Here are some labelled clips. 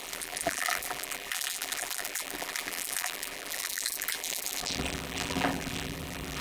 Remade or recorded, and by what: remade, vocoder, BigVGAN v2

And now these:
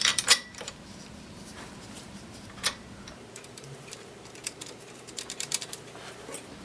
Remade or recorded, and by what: remade, vocoder, BigVGAN v2